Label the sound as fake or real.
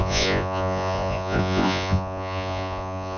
fake